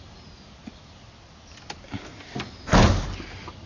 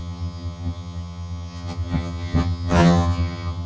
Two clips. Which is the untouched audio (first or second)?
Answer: first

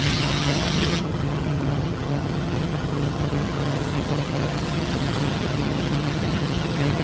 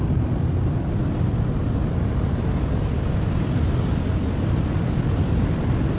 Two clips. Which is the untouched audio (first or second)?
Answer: second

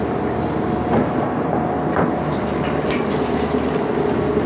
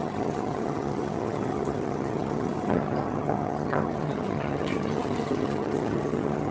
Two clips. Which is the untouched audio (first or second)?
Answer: first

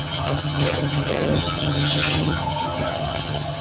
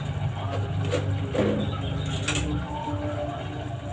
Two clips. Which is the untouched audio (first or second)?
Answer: second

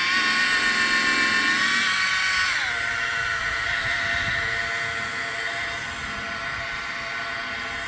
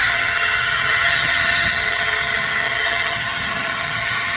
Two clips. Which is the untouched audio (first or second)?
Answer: first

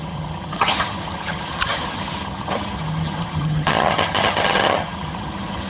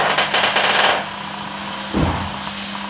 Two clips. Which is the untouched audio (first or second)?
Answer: second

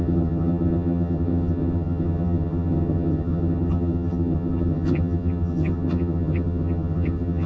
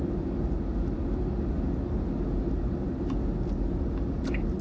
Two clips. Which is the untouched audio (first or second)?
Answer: second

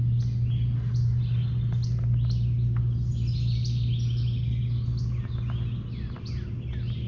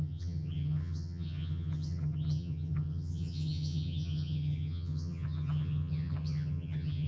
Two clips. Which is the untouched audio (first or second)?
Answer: first